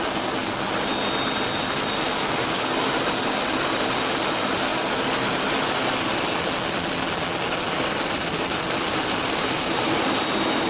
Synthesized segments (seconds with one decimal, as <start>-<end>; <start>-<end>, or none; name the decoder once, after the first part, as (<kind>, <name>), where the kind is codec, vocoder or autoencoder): 0.0-0.4 (vocoder, BigVGAN v2); 1.2-4.7; 7.7-10.7